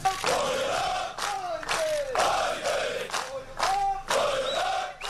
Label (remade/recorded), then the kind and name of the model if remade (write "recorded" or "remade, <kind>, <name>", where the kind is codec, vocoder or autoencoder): recorded